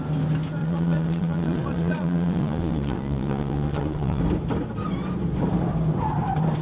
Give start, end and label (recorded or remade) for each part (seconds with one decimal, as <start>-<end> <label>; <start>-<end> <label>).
0.0-0.6 recorded; 0.6-4.2 remade; 4.2-6.6 recorded